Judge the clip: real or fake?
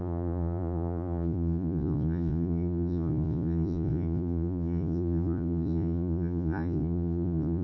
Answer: fake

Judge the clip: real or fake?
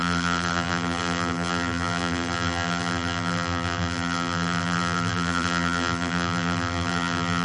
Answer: fake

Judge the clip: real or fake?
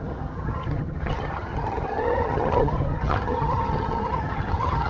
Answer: fake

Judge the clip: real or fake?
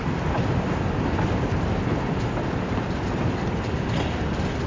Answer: real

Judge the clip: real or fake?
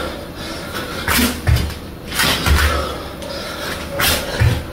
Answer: real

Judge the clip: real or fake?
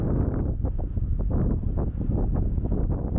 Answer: real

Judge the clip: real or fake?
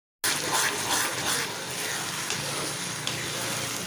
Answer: real